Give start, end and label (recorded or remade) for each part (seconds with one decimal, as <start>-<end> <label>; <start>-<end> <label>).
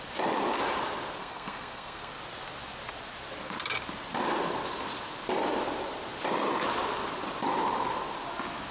0.0-1.2 recorded; 1.2-2.1 remade; 2.1-8.7 recorded